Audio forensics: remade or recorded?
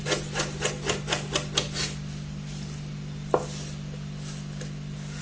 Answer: recorded